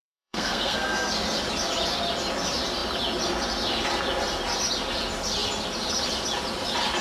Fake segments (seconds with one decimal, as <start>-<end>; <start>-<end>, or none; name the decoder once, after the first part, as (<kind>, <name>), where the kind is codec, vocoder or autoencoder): 0.0-1.1 (codec, SNAC)